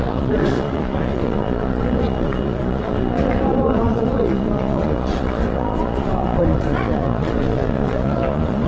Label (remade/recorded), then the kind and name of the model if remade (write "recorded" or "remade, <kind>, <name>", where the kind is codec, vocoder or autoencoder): remade, vocoder, Vocos